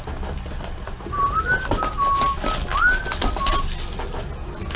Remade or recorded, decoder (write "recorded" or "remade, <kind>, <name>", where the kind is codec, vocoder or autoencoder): recorded